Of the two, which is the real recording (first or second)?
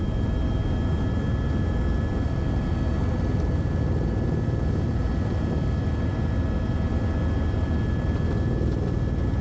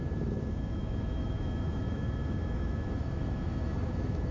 first